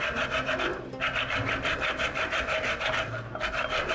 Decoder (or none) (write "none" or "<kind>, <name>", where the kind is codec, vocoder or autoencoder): none